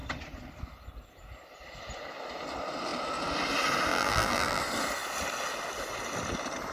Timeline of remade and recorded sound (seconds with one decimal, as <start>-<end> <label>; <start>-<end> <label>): 0.0-3.9 recorded; 3.9-4.6 remade; 4.6-6.7 recorded